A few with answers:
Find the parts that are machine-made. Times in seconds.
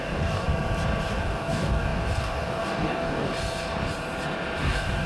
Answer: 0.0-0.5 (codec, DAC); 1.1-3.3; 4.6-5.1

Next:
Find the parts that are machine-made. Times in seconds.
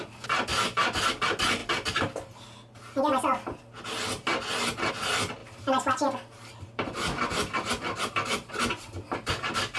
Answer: 0.5-1.1 (vocoder, BigVGAN v2); 5.4-8.5